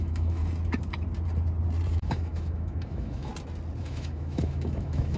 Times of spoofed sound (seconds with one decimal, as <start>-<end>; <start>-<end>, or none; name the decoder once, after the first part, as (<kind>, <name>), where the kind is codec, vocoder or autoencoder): 0.0-0.4 (autoencoder, DAC-VAE); 1.9-3.3; 3.8-5.2